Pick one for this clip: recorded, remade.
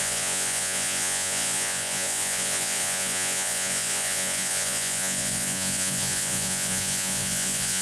remade